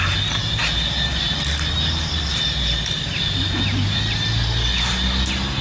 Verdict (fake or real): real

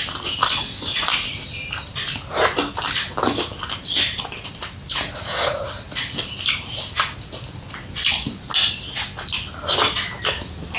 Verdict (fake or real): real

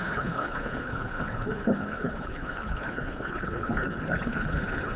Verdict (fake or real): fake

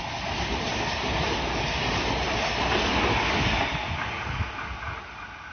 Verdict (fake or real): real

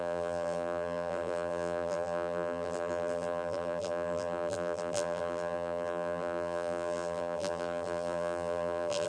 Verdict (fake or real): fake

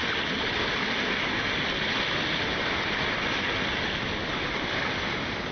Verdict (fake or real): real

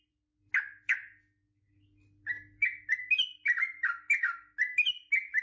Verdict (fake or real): real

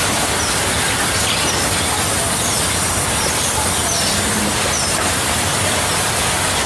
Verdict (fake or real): real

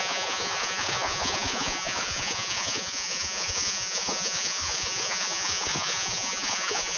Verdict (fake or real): fake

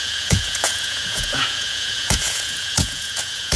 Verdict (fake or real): fake